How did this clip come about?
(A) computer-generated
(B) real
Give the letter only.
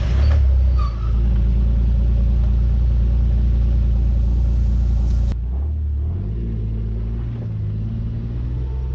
B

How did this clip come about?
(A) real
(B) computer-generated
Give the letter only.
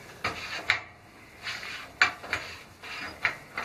A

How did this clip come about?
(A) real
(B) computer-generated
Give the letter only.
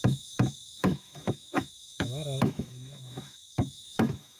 B